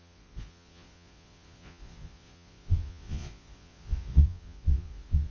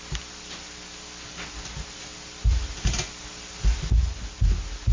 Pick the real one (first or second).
second